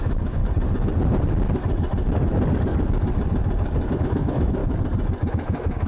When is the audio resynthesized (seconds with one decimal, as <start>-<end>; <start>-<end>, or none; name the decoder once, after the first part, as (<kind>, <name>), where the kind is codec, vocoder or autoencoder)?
0.0-0.4 (autoencoder, DAC-VAE); 3.9-4.6; 5.3-5.9